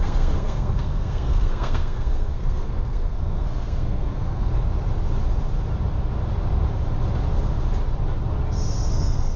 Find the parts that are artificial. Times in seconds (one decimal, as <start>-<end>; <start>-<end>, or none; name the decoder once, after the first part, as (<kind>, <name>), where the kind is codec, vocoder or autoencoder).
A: 0.0-4.5 (codec, SNAC); 8.9-9.4